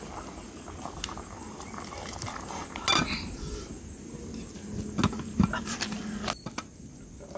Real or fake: real